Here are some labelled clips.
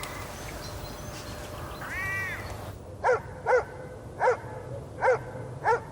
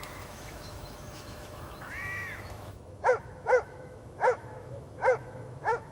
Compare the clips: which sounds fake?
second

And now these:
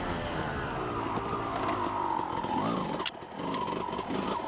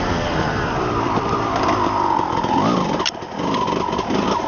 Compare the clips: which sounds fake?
second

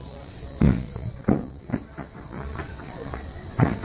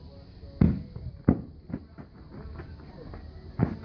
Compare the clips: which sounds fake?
first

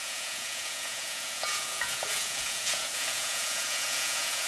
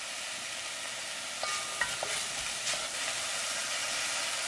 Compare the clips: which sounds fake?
first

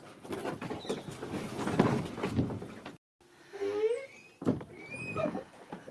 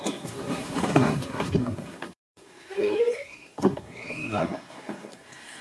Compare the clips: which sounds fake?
second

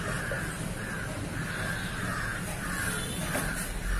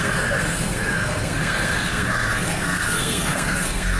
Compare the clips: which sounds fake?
second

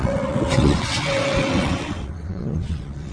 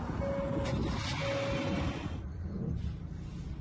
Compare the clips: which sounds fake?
first